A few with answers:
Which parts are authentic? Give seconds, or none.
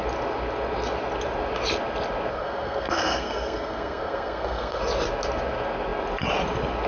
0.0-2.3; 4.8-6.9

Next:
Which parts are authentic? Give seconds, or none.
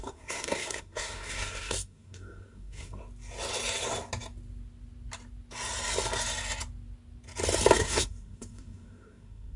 3.0-7.8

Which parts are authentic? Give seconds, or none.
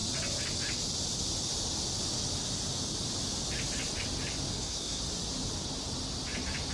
0.0-4.5; 5.0-6.7